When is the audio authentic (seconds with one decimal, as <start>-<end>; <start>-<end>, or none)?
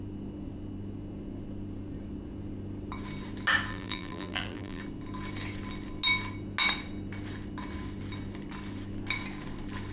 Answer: 0.0-3.7; 4.8-9.9